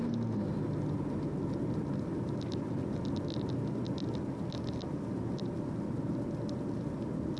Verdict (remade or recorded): recorded